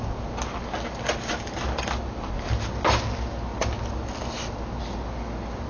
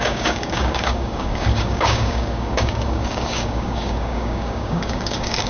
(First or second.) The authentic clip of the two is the first